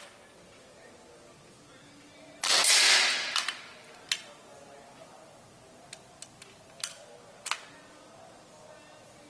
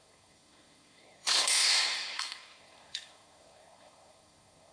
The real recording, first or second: first